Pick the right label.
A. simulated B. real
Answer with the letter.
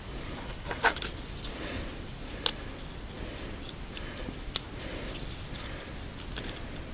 B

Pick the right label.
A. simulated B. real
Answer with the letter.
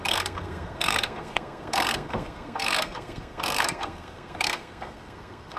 A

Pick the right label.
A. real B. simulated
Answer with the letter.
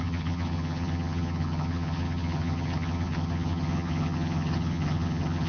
B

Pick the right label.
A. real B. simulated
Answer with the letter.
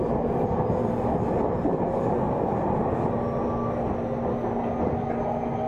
A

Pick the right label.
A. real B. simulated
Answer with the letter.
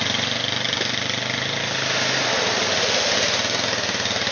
A